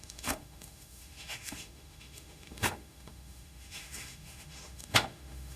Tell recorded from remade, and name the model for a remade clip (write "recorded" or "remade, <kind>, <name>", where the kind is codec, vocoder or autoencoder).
remade, autoencoder, DAC-VAE